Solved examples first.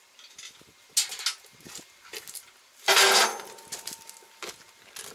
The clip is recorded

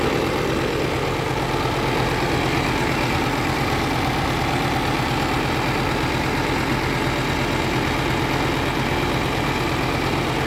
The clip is recorded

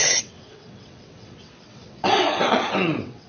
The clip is remade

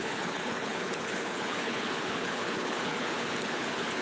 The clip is remade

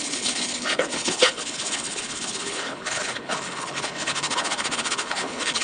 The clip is remade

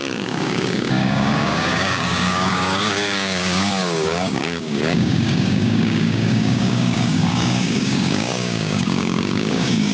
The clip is remade